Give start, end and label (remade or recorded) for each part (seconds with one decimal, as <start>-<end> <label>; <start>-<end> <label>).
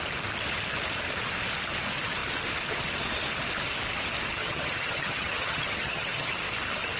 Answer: 0.0-4.4 recorded; 4.4-6.3 remade; 6.3-7.0 recorded